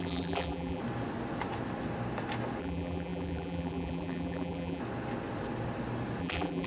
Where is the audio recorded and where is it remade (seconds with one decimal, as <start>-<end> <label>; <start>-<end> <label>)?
0.0-0.8 remade; 0.8-2.6 recorded; 2.6-4.8 remade; 4.8-6.2 recorded; 6.2-6.7 remade

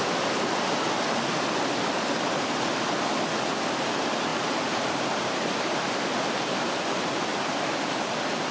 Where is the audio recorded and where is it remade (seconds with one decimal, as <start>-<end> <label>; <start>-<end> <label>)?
0.0-4.3 recorded; 4.3-6.0 remade; 6.0-8.5 recorded

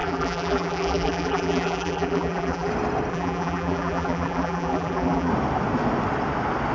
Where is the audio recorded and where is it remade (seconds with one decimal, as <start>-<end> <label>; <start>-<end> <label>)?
0.0-2.7 remade; 2.7-3.1 recorded; 3.1-5.3 remade; 5.3-6.7 recorded